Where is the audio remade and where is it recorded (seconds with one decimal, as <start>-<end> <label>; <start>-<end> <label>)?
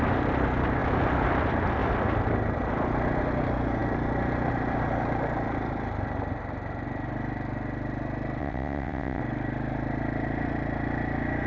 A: 0.0-8.4 recorded; 8.4-9.2 remade; 9.2-11.5 recorded